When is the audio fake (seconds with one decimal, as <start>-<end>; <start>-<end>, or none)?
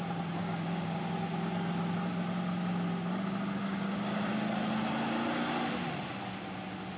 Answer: 0.4-1.0; 3.6-4.3